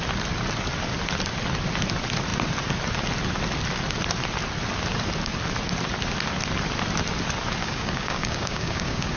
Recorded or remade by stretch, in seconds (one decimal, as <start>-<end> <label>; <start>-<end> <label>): 0.0-7.6 recorded; 7.6-9.2 remade